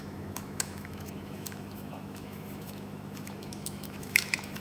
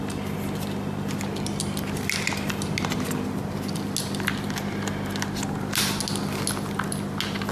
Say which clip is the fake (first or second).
first